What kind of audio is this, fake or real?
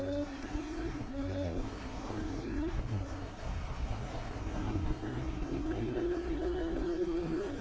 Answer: fake